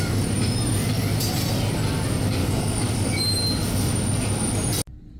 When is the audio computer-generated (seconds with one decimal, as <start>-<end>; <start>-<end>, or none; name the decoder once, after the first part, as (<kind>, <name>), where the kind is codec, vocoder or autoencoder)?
2.4-3.2 (codec, DAC)